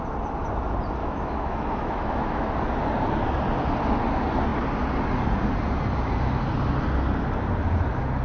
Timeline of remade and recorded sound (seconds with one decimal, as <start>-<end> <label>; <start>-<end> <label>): 0.0-1.0 recorded; 1.0-2.5 remade; 2.5-8.2 recorded